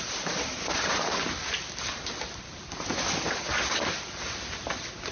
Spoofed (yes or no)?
no